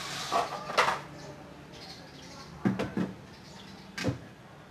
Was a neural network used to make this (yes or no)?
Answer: no